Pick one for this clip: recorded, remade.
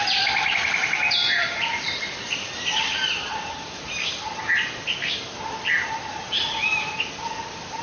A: remade